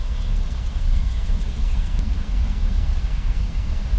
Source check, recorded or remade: remade